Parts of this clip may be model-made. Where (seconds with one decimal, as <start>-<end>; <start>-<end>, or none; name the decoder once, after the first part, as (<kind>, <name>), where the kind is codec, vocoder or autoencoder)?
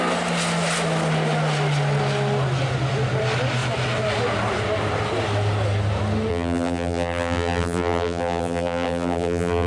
6.3-9.7 (vocoder, BigVGAN v2)